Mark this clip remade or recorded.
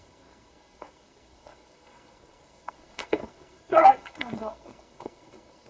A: remade